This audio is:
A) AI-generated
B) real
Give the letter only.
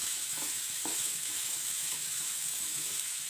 A